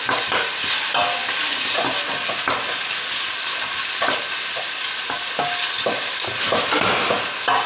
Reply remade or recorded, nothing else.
recorded